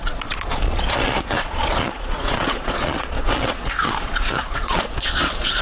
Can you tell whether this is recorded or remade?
remade